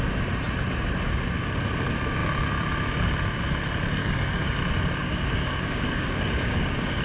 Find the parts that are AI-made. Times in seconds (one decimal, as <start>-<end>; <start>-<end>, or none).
4.0-4.6; 5.0-7.0